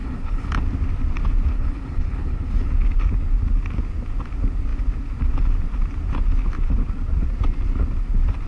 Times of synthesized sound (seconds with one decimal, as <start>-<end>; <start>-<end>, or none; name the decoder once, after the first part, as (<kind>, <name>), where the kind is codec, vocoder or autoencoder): 0.0-0.5 (codec, HILCodec); 1.5-2.7